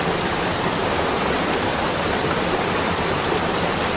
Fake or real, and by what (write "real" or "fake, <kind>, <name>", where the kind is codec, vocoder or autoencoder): fake, vocoder, BigVGAN v2